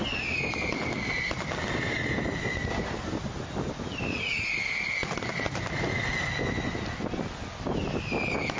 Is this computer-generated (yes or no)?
no